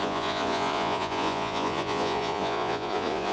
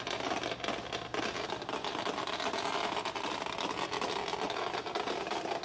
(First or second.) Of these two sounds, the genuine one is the second